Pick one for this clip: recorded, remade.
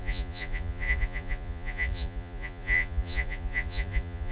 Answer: remade